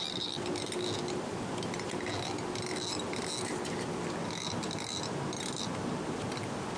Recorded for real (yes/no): yes